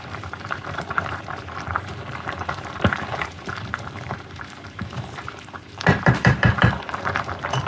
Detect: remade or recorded remade